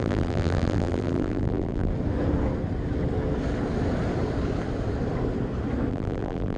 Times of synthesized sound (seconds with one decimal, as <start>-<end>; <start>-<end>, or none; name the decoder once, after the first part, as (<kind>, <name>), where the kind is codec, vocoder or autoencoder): 0.0-1.9 (vocoder, BigVGAN v2); 5.9-6.6